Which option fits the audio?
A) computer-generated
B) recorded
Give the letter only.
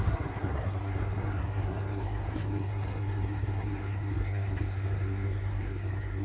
A